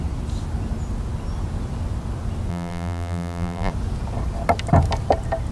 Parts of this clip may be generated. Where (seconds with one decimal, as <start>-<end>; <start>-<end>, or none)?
2.5-3.7